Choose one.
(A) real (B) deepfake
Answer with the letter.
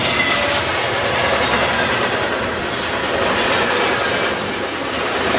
A